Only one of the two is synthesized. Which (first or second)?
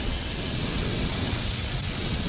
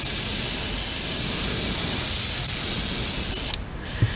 first